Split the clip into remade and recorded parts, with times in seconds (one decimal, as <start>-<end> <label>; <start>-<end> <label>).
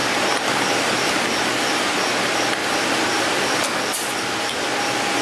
0.0-5.2 recorded